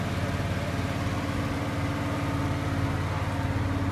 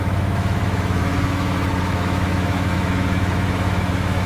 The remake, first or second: second